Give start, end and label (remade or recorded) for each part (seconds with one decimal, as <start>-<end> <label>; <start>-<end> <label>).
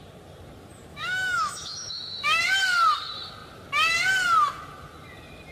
0.0-0.9 recorded; 0.9-2.4 remade; 2.4-5.5 recorded